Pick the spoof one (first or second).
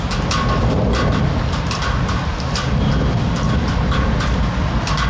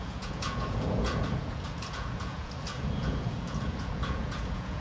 second